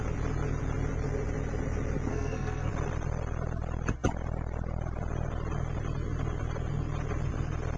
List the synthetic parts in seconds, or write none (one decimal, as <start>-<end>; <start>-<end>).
2.1-2.7

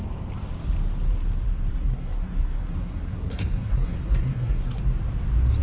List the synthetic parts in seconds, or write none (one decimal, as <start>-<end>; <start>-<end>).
1.7-4.8